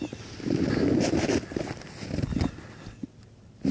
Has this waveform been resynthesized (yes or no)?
no